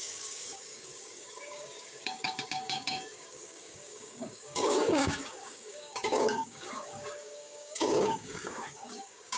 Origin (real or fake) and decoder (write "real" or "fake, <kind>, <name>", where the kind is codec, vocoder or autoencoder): fake, codec, DAC